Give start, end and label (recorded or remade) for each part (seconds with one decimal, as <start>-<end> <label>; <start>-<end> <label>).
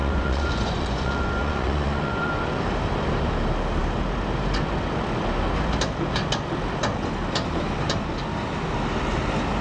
0.0-2.6 remade; 2.6-9.6 recorded